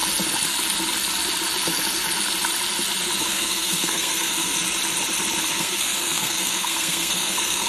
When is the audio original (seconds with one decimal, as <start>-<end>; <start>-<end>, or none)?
0.0-3.2; 4.5-5.5